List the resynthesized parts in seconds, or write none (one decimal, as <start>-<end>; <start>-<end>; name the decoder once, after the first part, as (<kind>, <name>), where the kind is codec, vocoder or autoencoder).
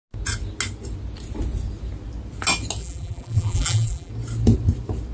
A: 2.8-4.1 (vocoder, BigVGAN v2)